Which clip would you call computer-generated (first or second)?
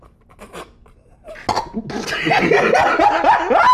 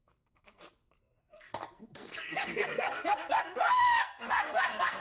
second